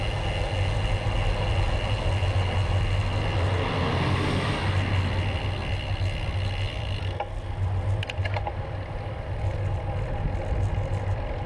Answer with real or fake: real